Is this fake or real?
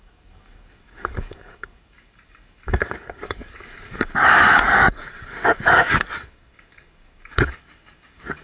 fake